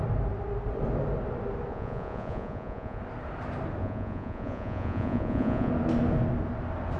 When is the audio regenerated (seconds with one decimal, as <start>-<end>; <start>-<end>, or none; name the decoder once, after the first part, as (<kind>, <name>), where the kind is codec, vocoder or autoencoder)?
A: 1.7-3.0 (vocoder, Vocos); 3.8-5.7